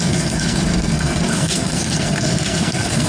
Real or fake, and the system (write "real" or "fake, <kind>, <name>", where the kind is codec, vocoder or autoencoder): fake, codec, SNAC